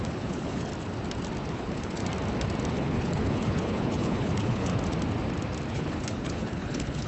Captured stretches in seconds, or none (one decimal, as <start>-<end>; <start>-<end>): 0.7-1.5; 2.0-2.7; 4.7-5.7